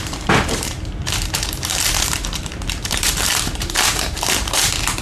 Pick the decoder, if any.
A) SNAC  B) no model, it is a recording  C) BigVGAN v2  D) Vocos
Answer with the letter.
C